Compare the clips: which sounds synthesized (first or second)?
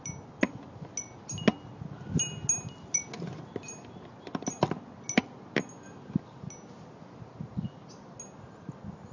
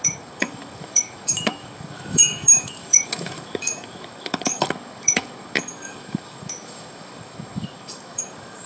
second